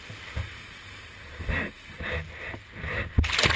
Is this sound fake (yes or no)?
no